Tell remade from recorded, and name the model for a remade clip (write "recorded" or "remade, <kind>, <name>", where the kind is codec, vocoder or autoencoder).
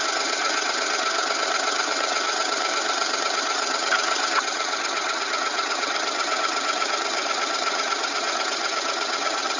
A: remade, vocoder, HiFi-GAN